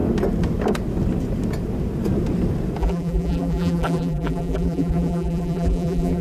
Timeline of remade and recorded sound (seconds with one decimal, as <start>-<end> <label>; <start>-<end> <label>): 0.0-2.8 recorded; 2.8-6.2 remade